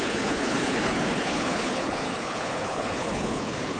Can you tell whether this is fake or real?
fake